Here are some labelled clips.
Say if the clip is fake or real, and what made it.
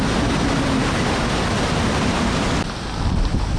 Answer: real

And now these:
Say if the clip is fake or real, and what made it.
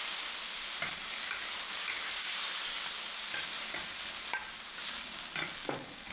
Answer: real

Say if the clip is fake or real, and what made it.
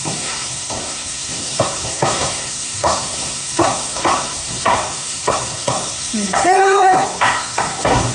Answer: fake, codec, SNAC